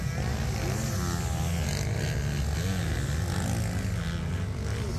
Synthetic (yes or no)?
no